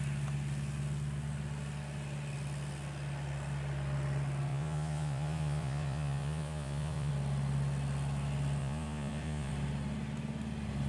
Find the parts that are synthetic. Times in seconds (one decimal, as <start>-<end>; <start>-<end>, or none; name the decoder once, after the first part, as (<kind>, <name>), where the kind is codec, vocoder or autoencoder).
4.5-7.1 (vocoder, Vocos); 8.6-9.5